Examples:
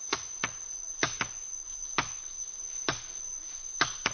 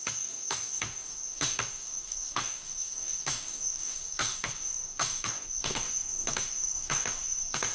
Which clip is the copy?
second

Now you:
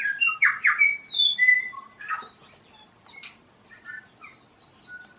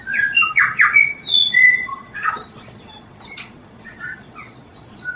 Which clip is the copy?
second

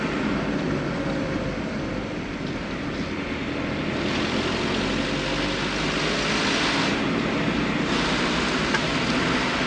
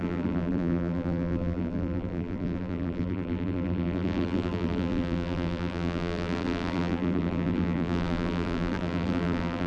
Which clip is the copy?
second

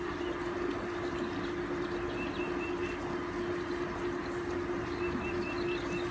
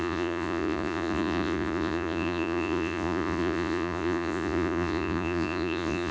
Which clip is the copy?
second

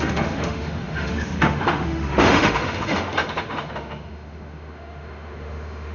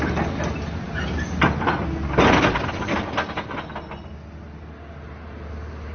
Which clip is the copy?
first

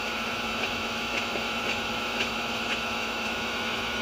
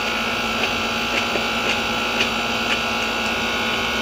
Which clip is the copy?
first